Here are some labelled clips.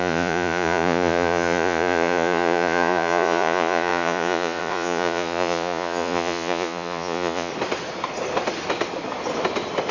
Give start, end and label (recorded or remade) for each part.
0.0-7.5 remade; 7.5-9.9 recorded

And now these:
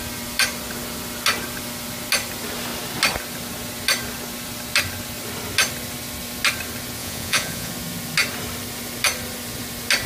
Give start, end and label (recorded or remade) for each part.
0.0-7.0 recorded; 7.0-7.7 remade; 7.7-10.1 recorded

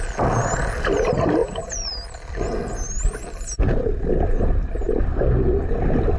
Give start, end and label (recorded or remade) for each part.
0.0-1.4 recorded; 1.4-1.9 remade; 1.9-6.2 recorded

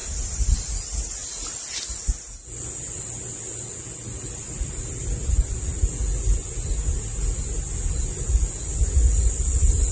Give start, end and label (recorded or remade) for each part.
0.0-9.9 recorded